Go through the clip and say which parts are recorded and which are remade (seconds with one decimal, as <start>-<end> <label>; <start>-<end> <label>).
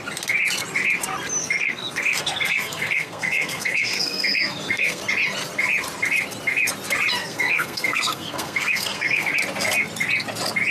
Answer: 0.0-1.4 recorded; 1.4-5.0 remade; 5.0-7.2 recorded; 7.2-9.3 remade; 9.3-10.7 recorded